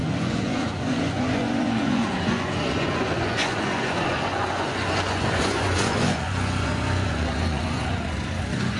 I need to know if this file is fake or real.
fake